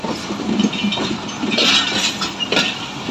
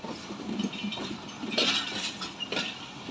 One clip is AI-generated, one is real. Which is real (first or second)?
first